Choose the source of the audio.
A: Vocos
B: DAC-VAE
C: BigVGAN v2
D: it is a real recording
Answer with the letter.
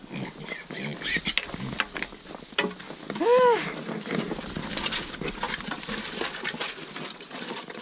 D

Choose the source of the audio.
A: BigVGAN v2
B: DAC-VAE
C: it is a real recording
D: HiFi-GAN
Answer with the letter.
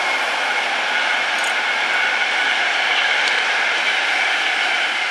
C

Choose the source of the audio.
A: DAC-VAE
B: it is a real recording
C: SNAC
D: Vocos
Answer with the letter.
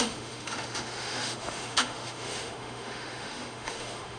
A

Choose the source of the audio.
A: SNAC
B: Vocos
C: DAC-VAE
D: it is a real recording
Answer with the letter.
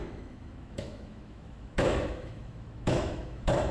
C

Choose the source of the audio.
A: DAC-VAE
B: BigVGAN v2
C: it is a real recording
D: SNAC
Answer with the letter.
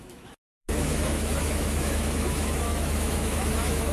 A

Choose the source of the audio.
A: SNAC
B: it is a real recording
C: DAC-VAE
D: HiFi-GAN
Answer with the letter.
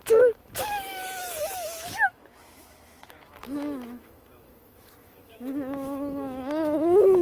C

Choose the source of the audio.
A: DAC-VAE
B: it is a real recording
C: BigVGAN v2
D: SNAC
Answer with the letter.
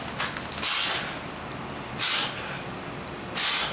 B